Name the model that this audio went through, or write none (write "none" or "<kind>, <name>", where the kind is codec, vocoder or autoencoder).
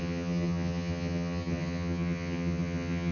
vocoder, HiFi-GAN